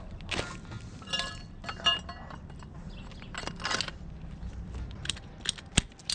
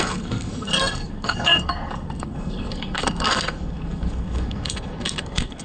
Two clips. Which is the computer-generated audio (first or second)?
second